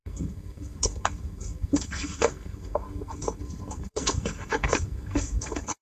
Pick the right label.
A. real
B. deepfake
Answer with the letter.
B